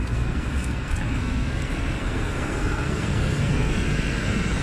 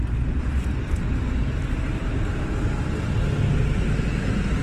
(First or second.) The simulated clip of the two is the first